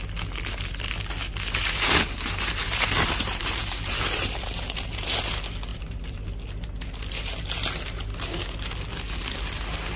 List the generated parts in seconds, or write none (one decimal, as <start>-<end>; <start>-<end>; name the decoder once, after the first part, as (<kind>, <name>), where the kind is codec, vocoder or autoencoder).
1.6-5.2 (vocoder, BigVGAN v2); 5.7-6.3